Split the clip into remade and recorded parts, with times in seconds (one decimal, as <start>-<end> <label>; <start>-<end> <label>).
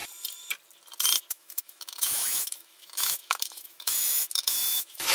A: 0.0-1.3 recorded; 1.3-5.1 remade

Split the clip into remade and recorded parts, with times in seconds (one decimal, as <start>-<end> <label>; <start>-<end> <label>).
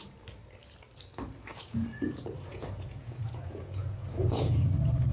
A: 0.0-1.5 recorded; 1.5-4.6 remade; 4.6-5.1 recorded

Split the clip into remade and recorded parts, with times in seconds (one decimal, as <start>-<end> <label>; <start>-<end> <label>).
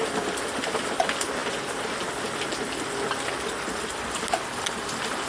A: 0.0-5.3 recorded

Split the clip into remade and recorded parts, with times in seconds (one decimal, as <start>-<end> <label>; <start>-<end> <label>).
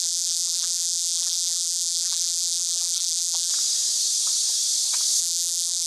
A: 0.0-3.5 remade; 3.5-5.2 recorded; 5.2-5.9 remade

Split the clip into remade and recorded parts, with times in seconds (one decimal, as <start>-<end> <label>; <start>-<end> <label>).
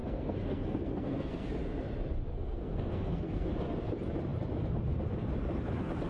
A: 0.0-1.5 remade; 1.5-2.3 recorded; 2.3-3.5 remade; 3.5-6.1 recorded